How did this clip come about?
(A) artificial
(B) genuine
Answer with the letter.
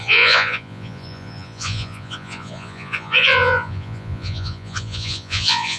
A